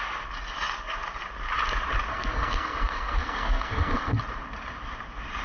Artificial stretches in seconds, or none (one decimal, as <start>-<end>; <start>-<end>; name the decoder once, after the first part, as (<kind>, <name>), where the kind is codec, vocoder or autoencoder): 2.1-4.2 (codec, SNAC)